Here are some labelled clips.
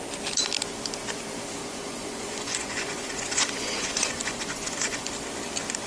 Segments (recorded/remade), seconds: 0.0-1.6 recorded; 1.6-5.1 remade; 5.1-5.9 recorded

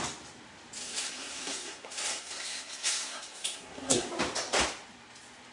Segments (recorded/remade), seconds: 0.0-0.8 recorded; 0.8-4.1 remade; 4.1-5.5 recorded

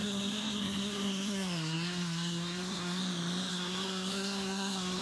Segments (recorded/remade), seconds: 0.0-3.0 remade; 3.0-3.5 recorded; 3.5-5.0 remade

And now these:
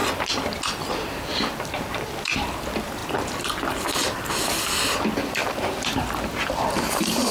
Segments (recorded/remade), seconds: 0.0-1.3 recorded; 1.3-7.3 remade

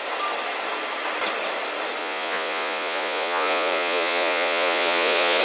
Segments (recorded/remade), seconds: 0.0-2.0 recorded; 2.0-5.4 remade

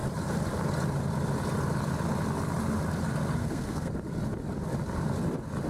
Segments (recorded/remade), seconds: 0.0-3.4 recorded; 3.4-3.9 remade; 3.9-5.7 recorded

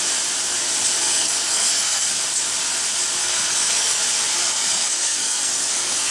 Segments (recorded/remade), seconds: 0.0-1.0 recorded; 1.0-2.2 remade; 2.2-3.2 recorded; 3.2-4.0 remade; 4.0-4.4 recorded; 4.4-6.1 remade